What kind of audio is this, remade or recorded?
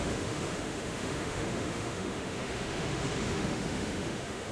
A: remade